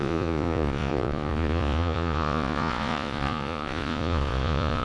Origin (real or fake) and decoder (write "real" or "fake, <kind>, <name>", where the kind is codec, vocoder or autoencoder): fake, vocoder, Vocos